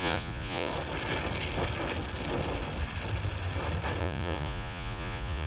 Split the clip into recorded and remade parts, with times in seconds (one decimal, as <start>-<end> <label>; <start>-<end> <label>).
0.0-0.7 remade; 0.7-4.0 recorded; 4.0-5.5 remade